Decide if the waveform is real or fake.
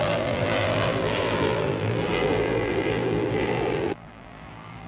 fake